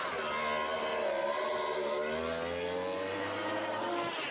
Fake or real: real